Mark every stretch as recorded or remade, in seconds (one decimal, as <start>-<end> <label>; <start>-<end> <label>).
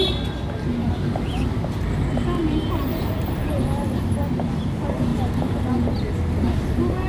0.0-0.8 recorded; 0.8-1.5 remade; 1.5-2.4 recorded; 2.4-4.0 remade; 4.0-5.1 recorded; 5.1-5.7 remade; 5.7-7.1 recorded